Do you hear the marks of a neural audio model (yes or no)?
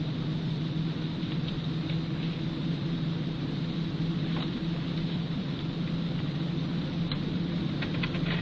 no